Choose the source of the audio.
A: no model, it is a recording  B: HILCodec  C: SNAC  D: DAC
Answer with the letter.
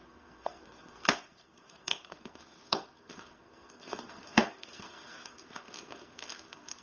C